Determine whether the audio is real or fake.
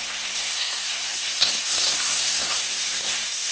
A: fake